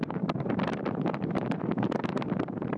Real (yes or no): no